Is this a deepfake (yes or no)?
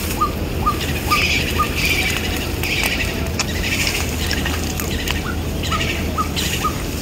no